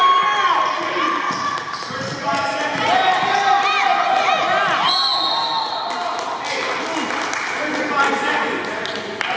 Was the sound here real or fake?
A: real